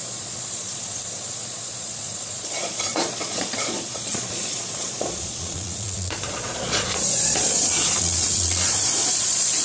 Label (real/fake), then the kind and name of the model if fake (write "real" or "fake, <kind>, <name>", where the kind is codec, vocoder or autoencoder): fake, vocoder, Vocos